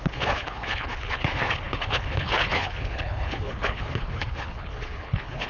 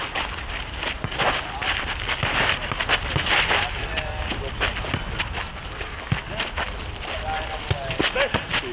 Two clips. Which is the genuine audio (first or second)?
second